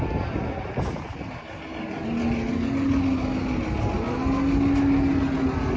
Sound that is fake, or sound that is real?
real